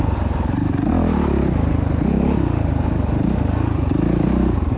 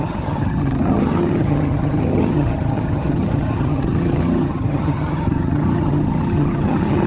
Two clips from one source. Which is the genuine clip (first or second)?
first